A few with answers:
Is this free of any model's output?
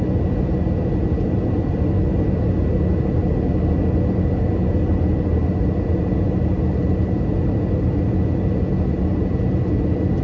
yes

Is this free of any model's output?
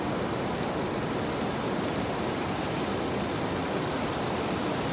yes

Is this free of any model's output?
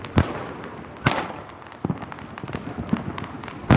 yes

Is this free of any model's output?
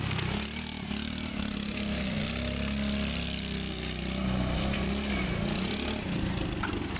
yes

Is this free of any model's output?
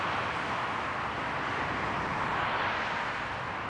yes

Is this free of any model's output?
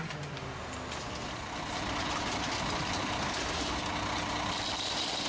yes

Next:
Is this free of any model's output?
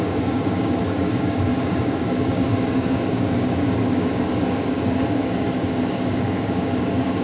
no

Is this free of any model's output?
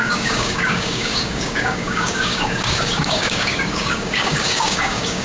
no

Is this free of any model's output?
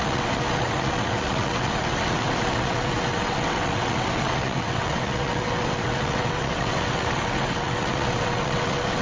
no